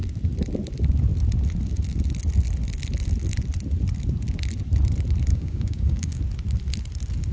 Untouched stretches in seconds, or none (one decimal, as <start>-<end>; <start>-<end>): 0.0-5.3; 6.2-7.3